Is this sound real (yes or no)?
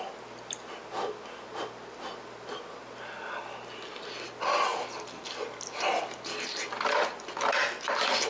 yes